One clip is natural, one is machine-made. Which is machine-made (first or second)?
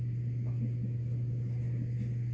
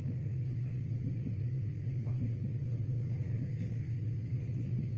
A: second